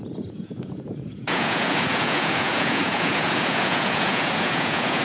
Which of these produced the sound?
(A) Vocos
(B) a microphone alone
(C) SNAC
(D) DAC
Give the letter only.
A